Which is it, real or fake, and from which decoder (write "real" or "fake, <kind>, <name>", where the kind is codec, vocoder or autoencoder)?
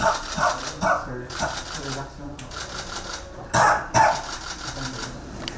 real